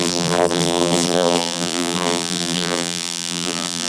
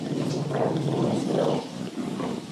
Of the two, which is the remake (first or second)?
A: first